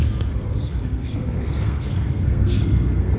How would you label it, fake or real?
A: fake